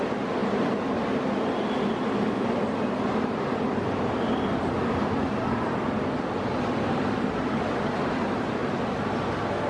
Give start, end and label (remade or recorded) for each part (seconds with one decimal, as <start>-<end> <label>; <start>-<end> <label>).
0.0-9.7 recorded